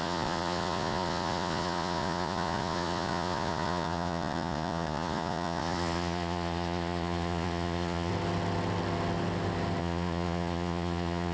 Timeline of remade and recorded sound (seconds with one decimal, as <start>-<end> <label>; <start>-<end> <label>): 0.0-8.1 remade; 8.1-9.8 recorded; 9.8-11.3 remade